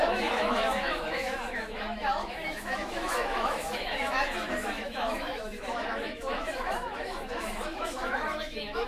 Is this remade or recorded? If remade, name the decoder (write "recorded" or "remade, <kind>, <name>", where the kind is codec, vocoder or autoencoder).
remade, autoencoder, DAC-VAE